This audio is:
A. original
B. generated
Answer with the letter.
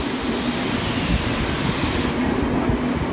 A